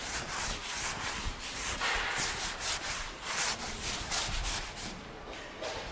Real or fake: real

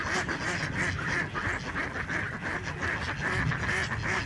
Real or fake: real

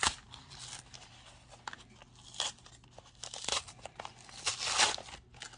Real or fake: real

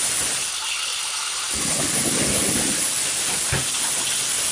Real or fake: real